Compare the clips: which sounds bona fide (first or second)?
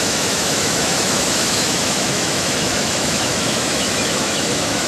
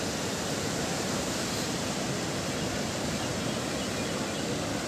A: second